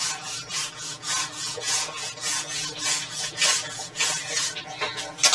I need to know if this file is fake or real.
real